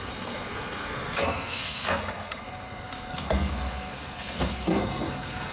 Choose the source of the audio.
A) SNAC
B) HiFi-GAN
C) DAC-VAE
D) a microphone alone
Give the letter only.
A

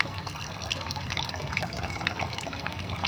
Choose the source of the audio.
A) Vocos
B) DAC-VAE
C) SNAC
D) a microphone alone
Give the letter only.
C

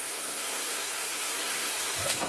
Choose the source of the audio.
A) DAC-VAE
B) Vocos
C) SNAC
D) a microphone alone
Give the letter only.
C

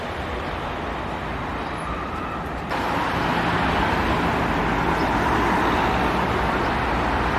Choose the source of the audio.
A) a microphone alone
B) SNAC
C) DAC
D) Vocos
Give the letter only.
A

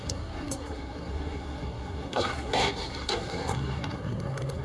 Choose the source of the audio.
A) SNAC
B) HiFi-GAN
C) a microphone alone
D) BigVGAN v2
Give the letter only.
A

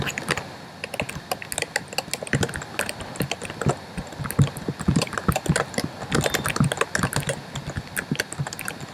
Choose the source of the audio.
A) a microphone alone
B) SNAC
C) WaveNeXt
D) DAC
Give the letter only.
A